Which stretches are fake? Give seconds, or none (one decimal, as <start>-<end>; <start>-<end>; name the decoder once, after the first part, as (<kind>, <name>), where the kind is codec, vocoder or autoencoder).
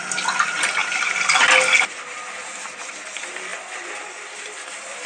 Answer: none